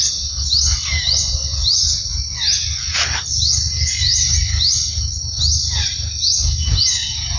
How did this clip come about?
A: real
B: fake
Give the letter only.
A